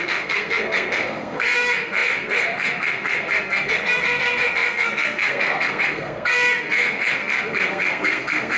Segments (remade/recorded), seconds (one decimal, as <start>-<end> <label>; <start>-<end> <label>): 0.0-8.6 remade